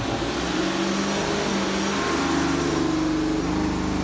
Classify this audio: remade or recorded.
recorded